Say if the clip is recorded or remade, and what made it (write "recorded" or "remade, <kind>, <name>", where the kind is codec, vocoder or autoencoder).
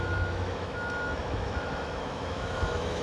remade, autoencoder, DAC-VAE